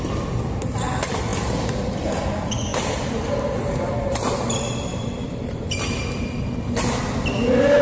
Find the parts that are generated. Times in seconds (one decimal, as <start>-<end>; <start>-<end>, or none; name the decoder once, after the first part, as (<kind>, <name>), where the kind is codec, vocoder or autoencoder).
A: 2.7-3.3 (vocoder, BigVGAN v2); 4.9-6.2